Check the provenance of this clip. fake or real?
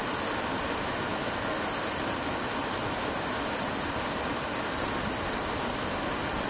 real